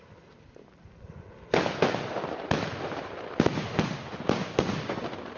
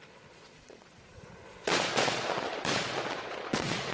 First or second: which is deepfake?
second